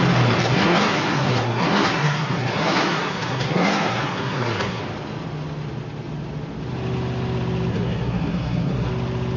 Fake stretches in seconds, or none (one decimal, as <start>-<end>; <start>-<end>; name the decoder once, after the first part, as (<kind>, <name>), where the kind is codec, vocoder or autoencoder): 0.4-4.8 (codec, SNAC); 7.7-8.9